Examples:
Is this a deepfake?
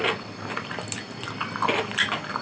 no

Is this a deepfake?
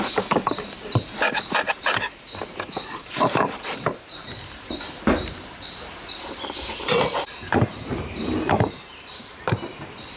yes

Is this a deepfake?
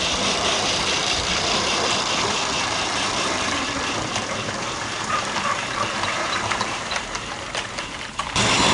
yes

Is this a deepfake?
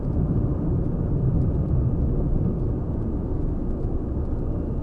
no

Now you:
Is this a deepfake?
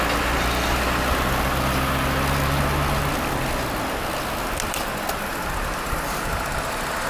no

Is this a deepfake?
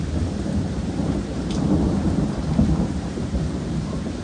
yes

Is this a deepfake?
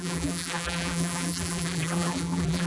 yes